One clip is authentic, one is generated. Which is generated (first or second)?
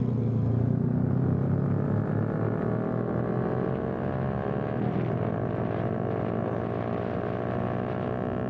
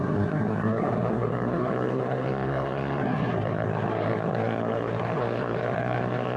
second